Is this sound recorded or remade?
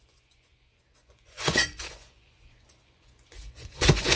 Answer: remade